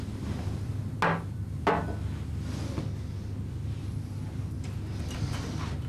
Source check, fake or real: real